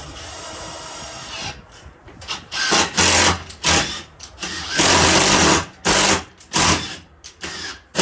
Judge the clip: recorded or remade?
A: recorded